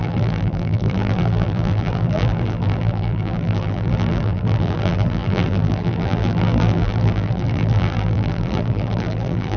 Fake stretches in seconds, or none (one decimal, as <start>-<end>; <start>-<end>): 0.0-9.6